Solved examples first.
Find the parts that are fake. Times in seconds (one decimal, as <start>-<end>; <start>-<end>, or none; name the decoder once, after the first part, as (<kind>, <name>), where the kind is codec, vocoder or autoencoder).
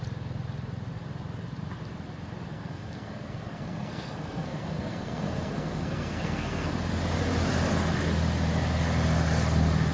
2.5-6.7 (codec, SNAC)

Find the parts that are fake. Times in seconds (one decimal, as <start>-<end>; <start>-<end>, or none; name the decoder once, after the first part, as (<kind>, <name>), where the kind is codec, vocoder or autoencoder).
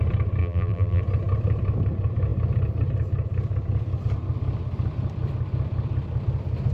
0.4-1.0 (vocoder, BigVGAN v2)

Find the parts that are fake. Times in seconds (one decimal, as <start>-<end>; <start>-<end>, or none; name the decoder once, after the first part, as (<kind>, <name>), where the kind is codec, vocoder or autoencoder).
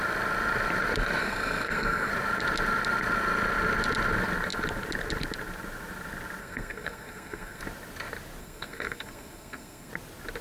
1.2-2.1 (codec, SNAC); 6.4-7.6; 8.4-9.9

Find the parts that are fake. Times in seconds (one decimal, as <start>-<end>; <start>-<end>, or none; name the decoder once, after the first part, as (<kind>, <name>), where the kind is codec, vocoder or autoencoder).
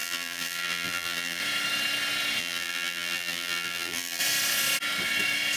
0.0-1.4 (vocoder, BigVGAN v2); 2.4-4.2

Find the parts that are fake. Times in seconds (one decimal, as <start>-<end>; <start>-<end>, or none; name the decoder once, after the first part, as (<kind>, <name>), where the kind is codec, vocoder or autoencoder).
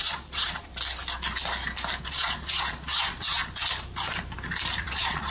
0.0-0.7 (vocoder, Vocos); 2.1-3.4; 4.8-5.3